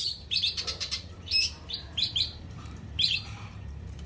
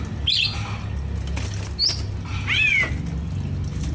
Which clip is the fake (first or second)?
first